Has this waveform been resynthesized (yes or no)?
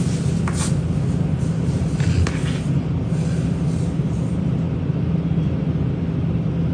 no